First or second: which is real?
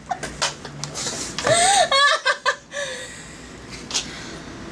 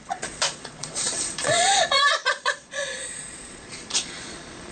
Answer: first